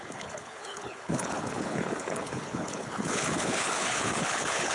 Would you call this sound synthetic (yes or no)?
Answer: yes